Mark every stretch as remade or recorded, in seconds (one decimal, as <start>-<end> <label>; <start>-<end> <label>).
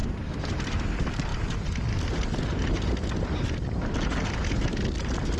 0.0-0.7 remade; 0.7-5.4 recorded